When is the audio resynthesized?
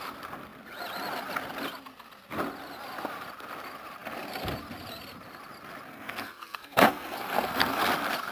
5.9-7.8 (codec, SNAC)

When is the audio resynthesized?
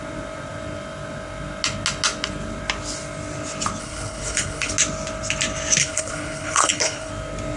3.8-4.7 (codec, HILCodec); 5.8-7.1